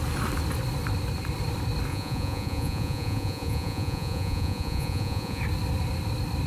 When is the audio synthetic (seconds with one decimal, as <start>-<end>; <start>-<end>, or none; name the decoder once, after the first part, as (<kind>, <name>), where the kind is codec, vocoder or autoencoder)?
1.9-5.4 (vocoder, Vocos)